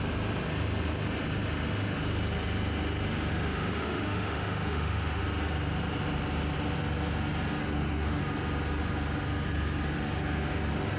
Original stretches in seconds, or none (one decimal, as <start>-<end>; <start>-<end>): 0.0-3.3; 5.2-7.6; 8.2-11.0